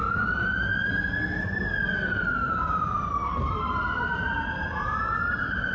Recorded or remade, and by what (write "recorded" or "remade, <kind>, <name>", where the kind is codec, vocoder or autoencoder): recorded